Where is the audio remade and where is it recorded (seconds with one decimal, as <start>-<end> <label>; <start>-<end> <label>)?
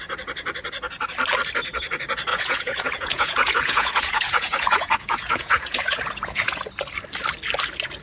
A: 0.0-2.3 recorded; 2.3-6.7 remade; 6.7-8.0 recorded